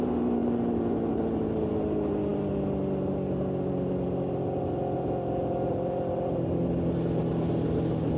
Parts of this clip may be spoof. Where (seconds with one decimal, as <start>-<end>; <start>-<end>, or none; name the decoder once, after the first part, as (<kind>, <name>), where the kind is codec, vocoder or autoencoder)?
none